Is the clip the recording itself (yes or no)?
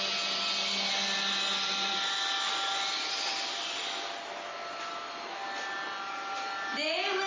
yes